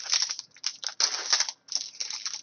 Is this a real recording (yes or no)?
yes